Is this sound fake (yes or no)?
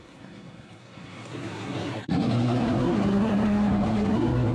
yes